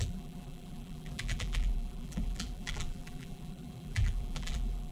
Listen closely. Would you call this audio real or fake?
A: fake